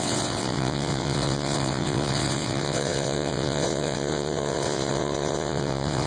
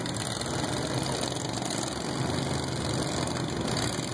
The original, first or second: second